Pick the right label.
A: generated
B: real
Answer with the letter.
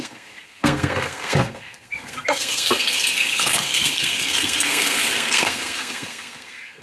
A